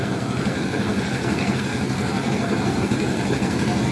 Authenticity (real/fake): fake